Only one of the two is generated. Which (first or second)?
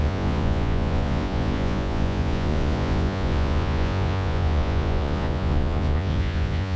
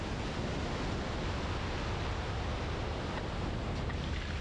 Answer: first